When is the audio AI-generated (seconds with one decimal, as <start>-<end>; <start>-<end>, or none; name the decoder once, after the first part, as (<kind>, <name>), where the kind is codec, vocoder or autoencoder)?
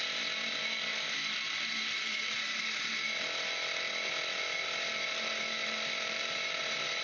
0.9-2.9 (vocoder, BigVGAN v2); 4.9-6.6